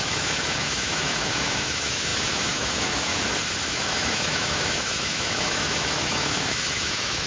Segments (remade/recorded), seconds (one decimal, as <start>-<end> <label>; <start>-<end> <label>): 0.0-3.1 remade; 3.1-3.7 recorded; 3.7-7.3 remade